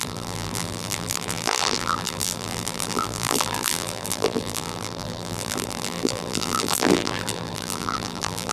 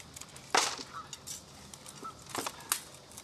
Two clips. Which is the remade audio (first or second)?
first